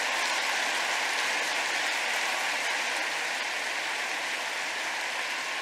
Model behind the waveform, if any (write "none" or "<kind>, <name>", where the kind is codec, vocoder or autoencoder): none